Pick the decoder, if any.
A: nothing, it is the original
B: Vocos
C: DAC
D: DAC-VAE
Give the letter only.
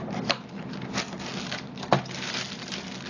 A